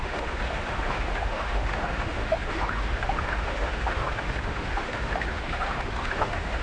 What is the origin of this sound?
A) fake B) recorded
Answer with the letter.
A